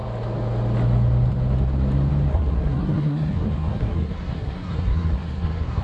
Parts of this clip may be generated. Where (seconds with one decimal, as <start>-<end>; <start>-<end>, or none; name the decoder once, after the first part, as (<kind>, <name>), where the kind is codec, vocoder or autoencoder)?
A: 2.3-5.8 (codec, SNAC)